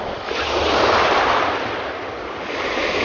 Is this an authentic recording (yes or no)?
yes